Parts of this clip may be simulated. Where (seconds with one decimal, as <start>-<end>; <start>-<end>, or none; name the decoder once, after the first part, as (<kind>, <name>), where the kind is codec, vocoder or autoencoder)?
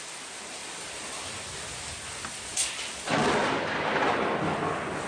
none